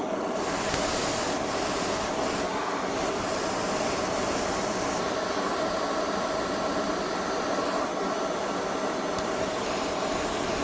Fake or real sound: real